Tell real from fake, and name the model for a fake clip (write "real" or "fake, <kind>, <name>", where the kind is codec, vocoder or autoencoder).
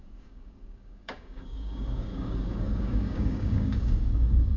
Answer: fake, codec, DAC